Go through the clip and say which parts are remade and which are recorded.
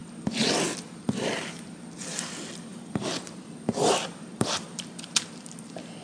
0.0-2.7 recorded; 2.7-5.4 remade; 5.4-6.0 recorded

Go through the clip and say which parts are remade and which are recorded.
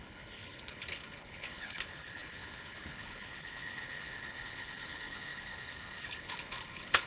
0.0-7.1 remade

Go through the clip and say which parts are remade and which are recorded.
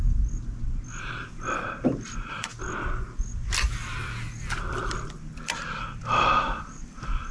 0.0-0.9 recorded; 0.9-2.5 remade; 2.5-3.5 recorded; 3.5-7.3 remade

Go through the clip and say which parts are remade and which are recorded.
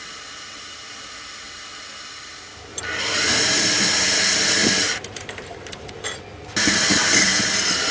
0.0-2.7 recorded; 2.7-3.2 remade; 3.2-4.6 recorded; 4.6-6.2 remade; 6.2-7.9 recorded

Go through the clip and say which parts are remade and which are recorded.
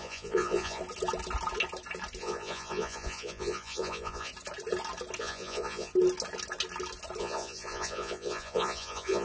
0.0-0.8 remade; 0.8-2.2 recorded; 2.2-4.3 remade; 4.3-5.2 recorded; 5.2-5.9 remade; 5.9-7.2 recorded; 7.2-9.2 remade